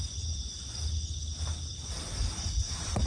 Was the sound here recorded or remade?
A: recorded